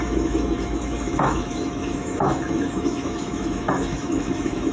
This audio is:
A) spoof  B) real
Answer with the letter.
A